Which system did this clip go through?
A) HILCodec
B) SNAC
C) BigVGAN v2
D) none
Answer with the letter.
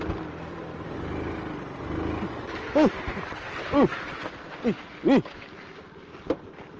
D